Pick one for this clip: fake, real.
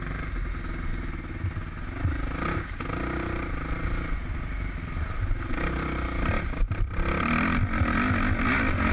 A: real